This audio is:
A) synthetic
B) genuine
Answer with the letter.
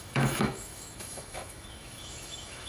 A